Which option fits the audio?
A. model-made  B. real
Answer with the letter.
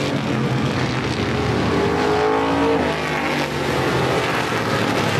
B